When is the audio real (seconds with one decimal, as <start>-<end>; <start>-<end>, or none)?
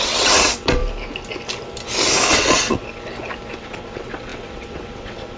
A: 0.8-2.3; 2.8-3.6